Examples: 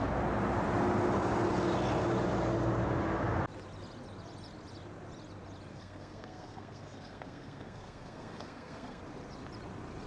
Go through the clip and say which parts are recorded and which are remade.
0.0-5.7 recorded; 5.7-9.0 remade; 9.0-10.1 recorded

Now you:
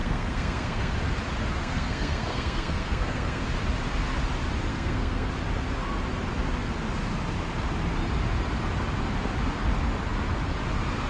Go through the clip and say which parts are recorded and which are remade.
0.0-0.9 remade; 0.9-1.6 recorded; 1.6-3.4 remade; 3.4-4.7 recorded; 4.7-5.3 remade; 5.3-11.1 recorded